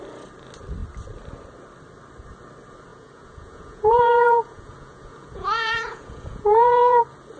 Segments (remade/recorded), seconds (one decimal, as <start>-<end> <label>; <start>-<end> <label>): 0.0-2.9 recorded; 2.9-7.0 remade; 7.0-7.4 recorded